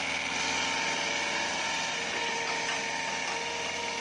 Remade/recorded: recorded